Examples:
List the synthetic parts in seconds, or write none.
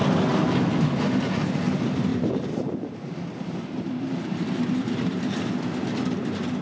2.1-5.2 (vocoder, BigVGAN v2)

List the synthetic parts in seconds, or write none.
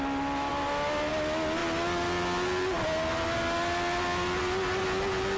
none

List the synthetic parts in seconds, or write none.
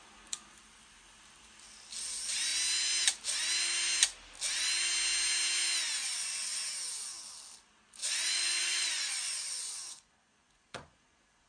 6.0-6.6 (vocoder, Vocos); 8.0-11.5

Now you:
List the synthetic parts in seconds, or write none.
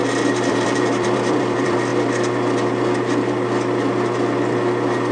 0.5-1.9 (vocoder, BigVGAN v2)